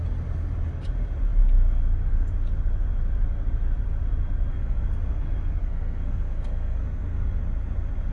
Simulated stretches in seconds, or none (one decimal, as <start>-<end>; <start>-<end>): 4.5-7.4